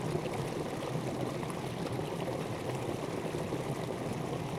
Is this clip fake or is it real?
real